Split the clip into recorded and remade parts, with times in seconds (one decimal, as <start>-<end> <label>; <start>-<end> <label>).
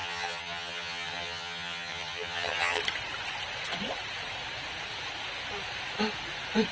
0.0-2.8 remade; 2.8-6.7 recorded